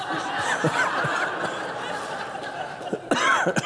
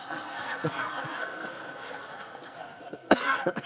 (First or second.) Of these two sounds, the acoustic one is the first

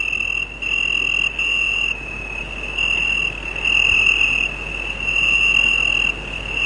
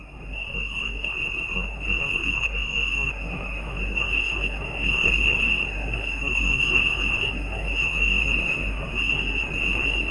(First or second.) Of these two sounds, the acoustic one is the first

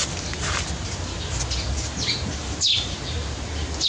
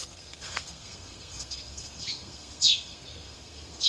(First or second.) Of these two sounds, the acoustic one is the first